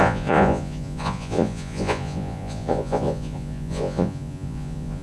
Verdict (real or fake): fake